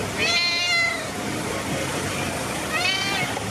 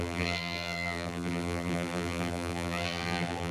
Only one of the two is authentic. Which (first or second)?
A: first